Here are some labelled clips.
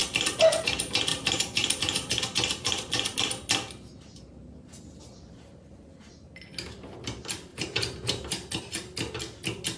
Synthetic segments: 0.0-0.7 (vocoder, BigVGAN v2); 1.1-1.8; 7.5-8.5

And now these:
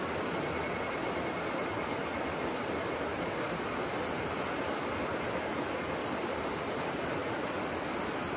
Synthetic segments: 1.0-1.7 (vocoder, BigVGAN v2); 3.1-4.2; 6.0-6.7

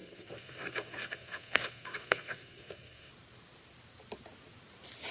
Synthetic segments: 0.0-3.1 (codec, SNAC)